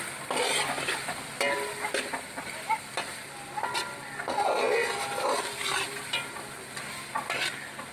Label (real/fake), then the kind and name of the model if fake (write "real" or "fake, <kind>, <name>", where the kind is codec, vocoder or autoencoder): real